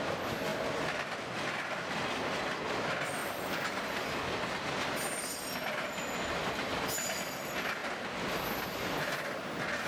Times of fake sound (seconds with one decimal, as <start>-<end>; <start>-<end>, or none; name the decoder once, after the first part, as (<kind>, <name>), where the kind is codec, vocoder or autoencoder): none